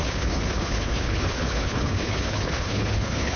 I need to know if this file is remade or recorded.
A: remade